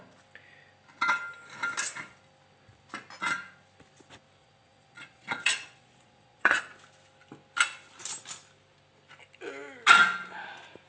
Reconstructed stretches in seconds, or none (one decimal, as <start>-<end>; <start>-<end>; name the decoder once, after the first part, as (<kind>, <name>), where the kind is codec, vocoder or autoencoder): 4.4-6.6 (vocoder, Vocos)